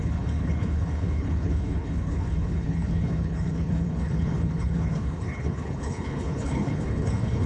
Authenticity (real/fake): fake